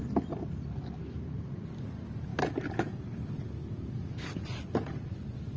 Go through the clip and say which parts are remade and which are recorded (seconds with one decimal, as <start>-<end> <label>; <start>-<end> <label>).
0.0-5.6 recorded